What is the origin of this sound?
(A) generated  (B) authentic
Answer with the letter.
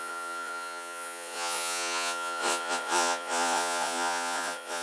A